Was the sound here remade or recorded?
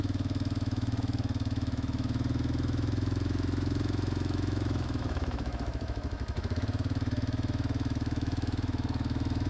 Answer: remade